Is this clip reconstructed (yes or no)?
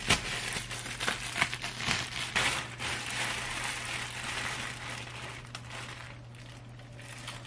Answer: no